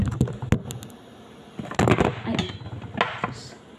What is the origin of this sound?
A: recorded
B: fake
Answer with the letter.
A